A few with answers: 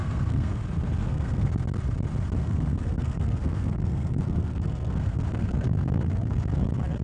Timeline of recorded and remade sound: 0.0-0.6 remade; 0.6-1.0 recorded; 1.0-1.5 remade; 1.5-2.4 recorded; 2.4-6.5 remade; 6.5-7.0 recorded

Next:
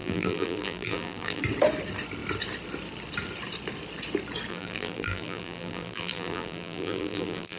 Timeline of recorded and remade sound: 0.0-1.4 remade; 1.4-4.5 recorded; 4.5-7.6 remade

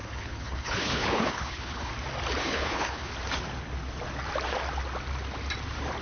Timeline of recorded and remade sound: 0.0-1.9 remade; 1.9-2.4 recorded; 2.4-3.1 remade; 3.1-6.0 recorded

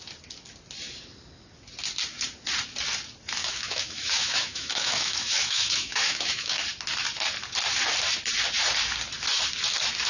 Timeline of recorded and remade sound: 0.0-3.4 recorded; 3.4-6.6 remade; 6.6-10.1 recorded

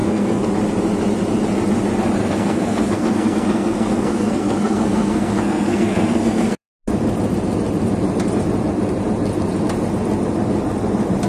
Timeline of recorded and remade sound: 0.0-0.5 remade; 0.5-2.2 recorded; 2.2-6.7 remade; 6.7-11.3 recorded

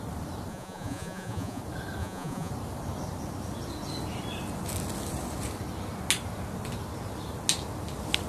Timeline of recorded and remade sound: 0.0-0.5 recorded; 0.5-1.6 remade; 1.6-2.0 recorded; 2.0-2.5 remade; 2.5-8.3 recorded

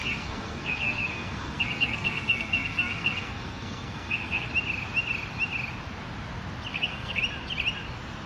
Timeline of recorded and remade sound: 0.0-4.5 remade; 4.5-6.7 recorded; 6.7-7.2 remade; 7.2-8.3 recorded

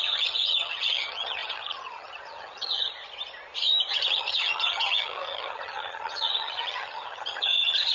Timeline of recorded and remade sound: 0.0-2.9 remade; 2.9-3.9 recorded; 3.9-7.9 remade